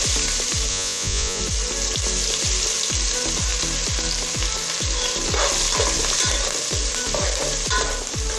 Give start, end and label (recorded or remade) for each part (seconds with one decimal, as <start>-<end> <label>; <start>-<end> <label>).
0.0-0.7 recorded; 0.7-1.4 remade; 1.4-8.4 recorded